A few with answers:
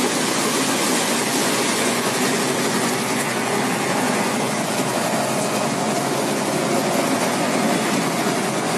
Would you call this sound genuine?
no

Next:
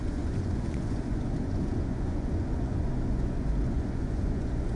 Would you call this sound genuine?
no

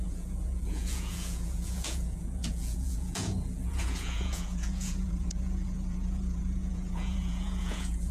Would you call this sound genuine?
no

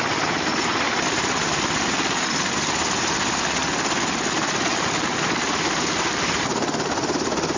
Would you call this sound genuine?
yes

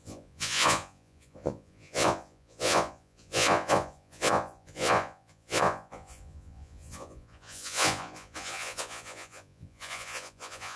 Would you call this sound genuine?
no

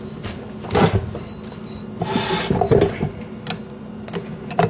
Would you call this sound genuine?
yes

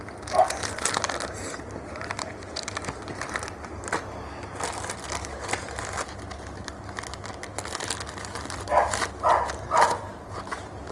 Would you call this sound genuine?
yes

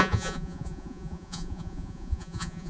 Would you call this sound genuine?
no